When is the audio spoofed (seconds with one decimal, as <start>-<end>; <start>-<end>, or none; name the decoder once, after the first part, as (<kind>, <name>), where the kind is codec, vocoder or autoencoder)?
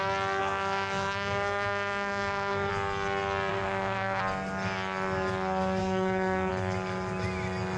0.4-2.7 (codec, SNAC); 3.5-4.2; 5.8-6.5